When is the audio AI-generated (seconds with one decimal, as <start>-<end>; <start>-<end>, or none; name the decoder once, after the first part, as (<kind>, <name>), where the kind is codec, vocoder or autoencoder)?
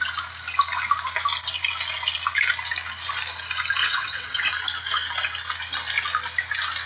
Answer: 3.8-4.5 (vocoder, WaveNeXt)